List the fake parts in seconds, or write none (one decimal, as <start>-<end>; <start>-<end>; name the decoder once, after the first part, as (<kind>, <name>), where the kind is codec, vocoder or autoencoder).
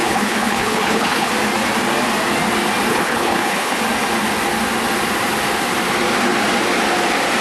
0.0-1.3 (codec, HILCodec); 2.9-3.8